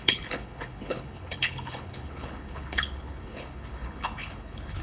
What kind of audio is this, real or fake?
fake